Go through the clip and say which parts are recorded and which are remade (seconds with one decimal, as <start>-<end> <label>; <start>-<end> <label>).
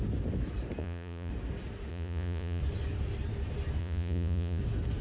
0.0-0.8 recorded; 0.8-1.3 remade; 1.3-1.9 recorded; 1.9-2.6 remade; 2.6-3.8 recorded; 3.8-4.6 remade; 4.6-5.0 recorded